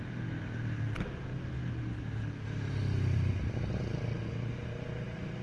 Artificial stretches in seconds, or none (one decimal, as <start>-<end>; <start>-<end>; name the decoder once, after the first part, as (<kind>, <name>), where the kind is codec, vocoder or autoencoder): none